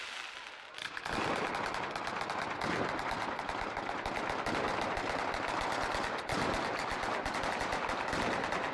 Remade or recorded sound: recorded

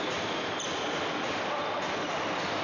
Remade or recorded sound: recorded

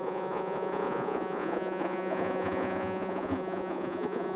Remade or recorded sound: remade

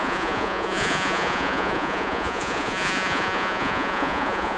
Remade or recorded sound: remade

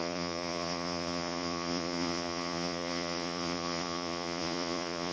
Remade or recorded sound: remade